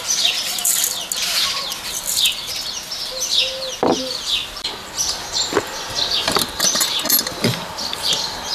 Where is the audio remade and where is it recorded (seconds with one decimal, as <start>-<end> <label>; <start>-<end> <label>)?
0.0-8.5 recorded